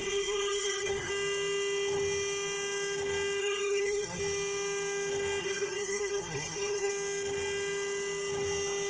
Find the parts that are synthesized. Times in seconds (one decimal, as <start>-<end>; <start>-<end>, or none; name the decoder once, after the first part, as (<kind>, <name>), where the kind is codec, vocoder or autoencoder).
0.0-1.1 (codec, SNAC); 3.4-4.2; 5.4-6.9